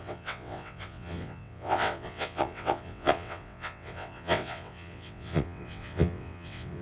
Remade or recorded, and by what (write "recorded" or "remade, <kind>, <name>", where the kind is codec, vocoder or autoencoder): remade, vocoder, WaveNeXt